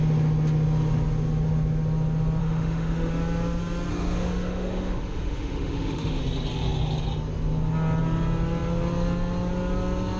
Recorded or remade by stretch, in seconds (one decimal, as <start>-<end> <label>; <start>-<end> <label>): 0.0-2.4 recorded; 2.4-3.1 remade; 3.1-3.9 recorded; 3.9-6.2 remade; 6.2-10.2 recorded